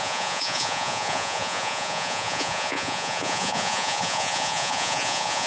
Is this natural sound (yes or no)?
no